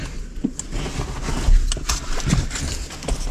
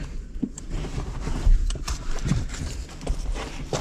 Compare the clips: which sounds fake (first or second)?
second